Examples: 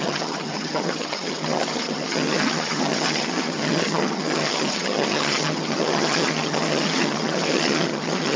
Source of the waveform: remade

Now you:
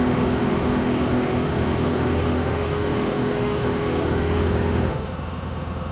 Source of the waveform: remade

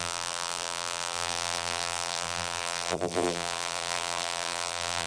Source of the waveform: remade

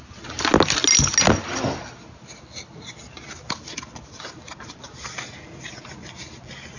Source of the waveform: recorded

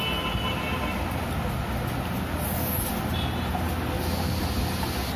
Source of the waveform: recorded